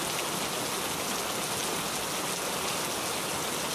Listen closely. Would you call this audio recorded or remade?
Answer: recorded